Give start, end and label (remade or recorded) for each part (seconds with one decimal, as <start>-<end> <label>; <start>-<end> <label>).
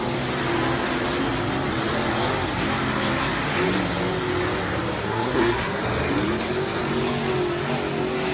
0.0-5.0 recorded; 5.0-5.8 remade; 5.8-8.3 recorded